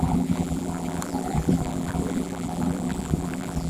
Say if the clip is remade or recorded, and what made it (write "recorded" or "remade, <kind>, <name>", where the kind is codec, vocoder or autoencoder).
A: remade, vocoder, BigVGAN v2